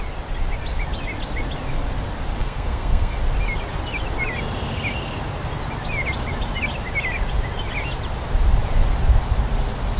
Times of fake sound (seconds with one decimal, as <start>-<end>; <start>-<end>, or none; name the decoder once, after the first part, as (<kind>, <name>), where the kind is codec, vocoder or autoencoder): 2.4-3.2 (codec, SNAC)